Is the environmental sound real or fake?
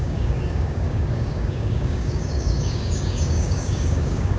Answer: fake